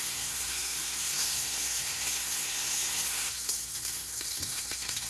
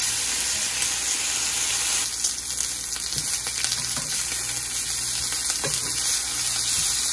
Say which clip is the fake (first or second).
first